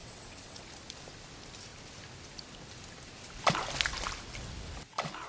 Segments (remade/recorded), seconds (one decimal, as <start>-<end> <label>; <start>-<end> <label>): 0.0-0.6 remade; 0.6-5.3 recorded